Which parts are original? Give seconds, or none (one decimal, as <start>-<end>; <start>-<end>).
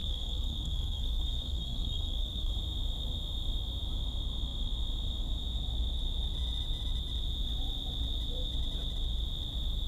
2.5-9.9